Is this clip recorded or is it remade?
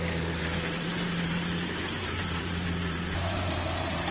remade